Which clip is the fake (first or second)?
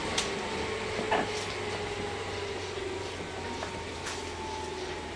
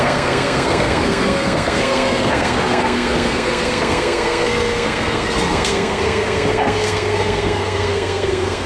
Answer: second